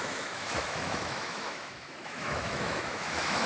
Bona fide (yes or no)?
no